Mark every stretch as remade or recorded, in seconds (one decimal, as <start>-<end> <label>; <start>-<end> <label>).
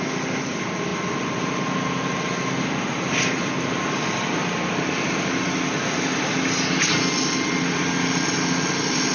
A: 0.0-9.1 recorded